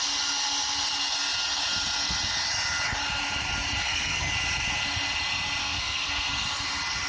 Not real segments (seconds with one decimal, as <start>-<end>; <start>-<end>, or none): 3.8-4.3; 5.6-6.3